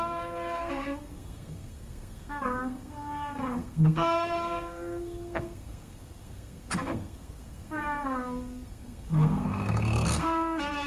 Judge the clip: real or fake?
fake